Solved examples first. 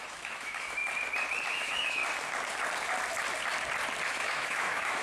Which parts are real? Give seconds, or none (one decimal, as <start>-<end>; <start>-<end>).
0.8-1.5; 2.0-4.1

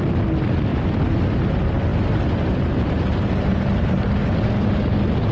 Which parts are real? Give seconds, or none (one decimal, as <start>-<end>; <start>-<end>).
0.0-0.7; 1.2-1.9; 4.2-5.3

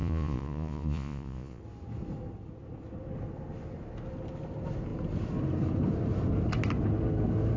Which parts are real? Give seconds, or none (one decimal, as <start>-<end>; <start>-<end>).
1.6-7.6

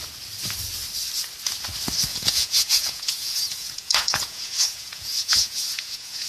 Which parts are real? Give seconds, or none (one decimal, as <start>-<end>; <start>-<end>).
0.0-2.1

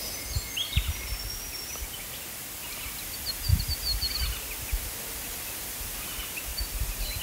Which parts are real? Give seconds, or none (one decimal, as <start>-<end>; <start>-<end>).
0.0-3.5; 4.2-6.5